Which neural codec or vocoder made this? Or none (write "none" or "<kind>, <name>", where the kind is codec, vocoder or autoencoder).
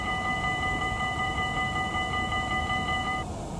vocoder, BigVGAN v2